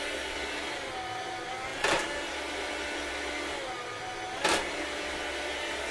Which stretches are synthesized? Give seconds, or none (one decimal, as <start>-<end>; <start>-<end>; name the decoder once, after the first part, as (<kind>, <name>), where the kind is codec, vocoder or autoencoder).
none